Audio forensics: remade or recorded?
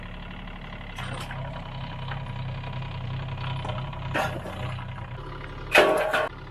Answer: recorded